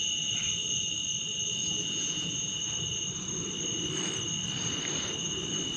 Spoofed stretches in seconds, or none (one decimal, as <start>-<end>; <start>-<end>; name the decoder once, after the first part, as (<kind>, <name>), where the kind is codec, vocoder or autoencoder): 1.6-2.6 (vocoder, Vocos)